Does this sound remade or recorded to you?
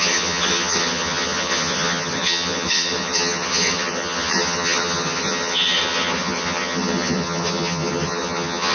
remade